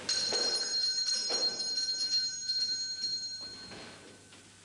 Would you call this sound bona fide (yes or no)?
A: yes